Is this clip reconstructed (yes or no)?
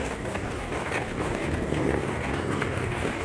yes